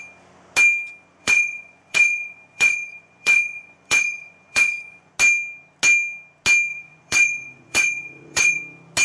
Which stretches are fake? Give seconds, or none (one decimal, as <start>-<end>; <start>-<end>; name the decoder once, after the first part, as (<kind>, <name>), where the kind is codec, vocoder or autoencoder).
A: 1.2-5.1 (vocoder, Vocos); 6.7-8.6